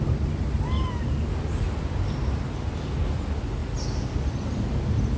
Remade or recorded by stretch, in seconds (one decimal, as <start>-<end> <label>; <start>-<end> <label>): 0.0-5.2 recorded